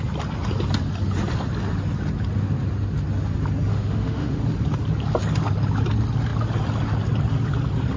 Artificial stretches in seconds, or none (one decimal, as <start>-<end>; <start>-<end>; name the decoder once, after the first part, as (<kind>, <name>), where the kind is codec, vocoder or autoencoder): 3.7-4.4 (autoencoder, DAC-VAE)